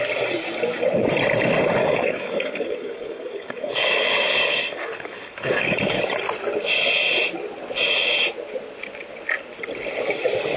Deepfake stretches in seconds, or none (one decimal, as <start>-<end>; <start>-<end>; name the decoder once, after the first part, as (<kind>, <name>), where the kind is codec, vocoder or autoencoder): 1.8-6.0 (codec, DAC)